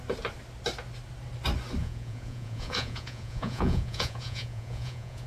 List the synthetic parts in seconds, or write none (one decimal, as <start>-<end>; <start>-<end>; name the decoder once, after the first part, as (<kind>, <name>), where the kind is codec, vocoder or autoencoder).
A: 1.8-5.3 (vocoder, Vocos)